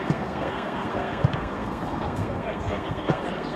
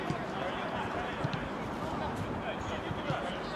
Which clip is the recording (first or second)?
second